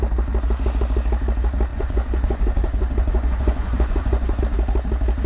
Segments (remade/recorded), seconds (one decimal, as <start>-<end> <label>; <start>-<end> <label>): 0.0-1.7 recorded; 1.7-4.4 remade; 4.4-5.3 recorded